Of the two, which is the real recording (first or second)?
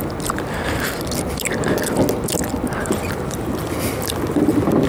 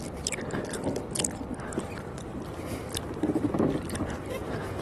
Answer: first